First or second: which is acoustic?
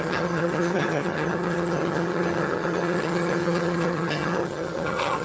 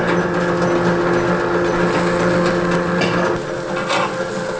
second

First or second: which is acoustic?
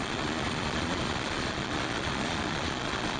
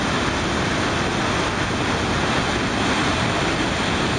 second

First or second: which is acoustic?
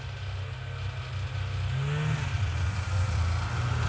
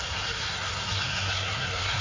first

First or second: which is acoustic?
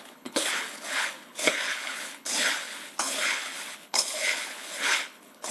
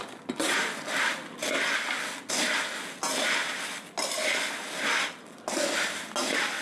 second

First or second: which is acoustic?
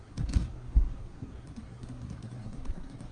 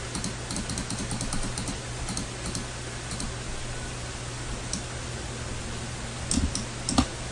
second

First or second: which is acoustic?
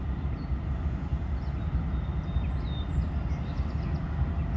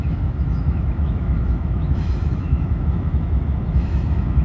first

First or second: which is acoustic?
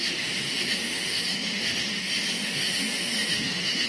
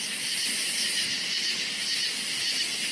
second